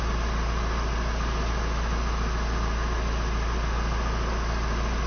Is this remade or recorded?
recorded